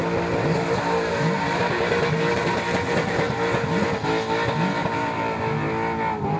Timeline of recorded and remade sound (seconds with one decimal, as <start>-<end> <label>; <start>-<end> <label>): 0.0-2.3 recorded; 2.3-3.8 remade; 3.8-4.8 recorded; 4.8-5.4 remade; 5.4-6.4 recorded

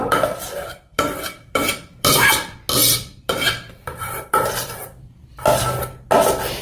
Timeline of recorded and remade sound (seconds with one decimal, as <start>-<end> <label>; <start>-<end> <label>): 0.0-0.9 recorded; 0.9-2.3 remade; 2.3-2.8 recorded; 2.8-5.3 remade; 5.3-6.6 recorded

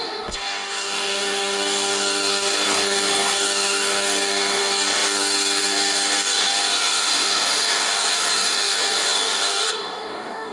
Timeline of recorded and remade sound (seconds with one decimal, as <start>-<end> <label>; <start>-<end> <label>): 0.0-10.5 remade